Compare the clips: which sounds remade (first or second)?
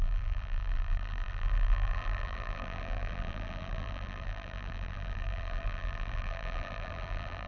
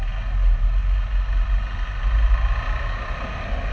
first